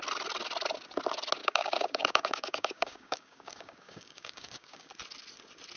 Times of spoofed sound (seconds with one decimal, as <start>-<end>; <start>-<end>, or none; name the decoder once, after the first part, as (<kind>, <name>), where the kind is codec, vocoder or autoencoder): 1.4-4.9 (codec, DAC)